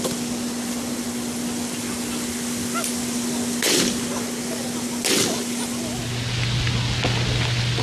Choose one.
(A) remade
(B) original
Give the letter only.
B